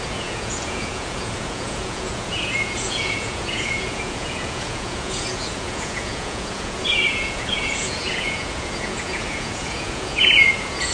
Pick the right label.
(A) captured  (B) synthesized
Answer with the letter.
B